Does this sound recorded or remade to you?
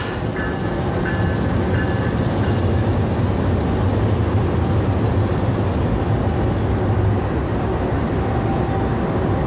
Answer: recorded